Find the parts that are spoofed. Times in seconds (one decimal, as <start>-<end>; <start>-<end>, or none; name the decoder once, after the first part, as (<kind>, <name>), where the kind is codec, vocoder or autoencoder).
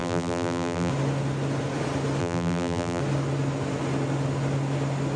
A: 0.0-0.9 (vocoder, BigVGAN v2); 2.2-3.0